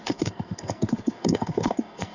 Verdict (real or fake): fake